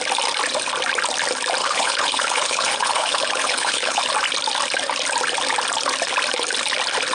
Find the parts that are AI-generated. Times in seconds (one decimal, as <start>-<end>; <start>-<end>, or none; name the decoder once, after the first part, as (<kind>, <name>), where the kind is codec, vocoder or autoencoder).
1.6-4.0 (codec, HILCodec)